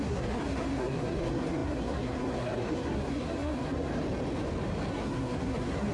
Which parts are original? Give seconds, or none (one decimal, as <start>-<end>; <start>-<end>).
3.9-4.9